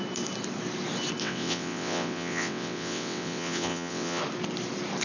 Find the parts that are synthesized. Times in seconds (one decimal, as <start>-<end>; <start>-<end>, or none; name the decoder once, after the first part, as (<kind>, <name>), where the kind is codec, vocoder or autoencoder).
1.2-4.2 (vocoder, WaveNeXt)